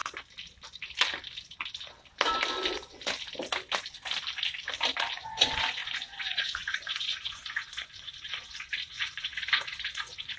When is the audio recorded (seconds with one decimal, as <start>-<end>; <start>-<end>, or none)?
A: 0.0-5.1